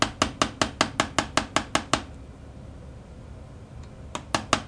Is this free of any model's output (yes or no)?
yes